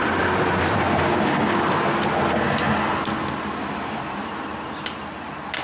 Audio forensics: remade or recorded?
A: recorded